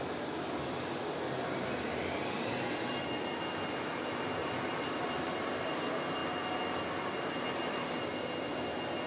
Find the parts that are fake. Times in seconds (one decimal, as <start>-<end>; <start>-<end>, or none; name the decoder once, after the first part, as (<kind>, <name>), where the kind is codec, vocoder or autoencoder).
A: 4.4-5.8 (vocoder, BigVGAN v2)